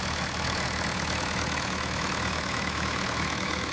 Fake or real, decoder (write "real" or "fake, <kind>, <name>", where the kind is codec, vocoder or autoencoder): fake, autoencoder, DAC-VAE